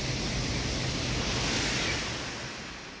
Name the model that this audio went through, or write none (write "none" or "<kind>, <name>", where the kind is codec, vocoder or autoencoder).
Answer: none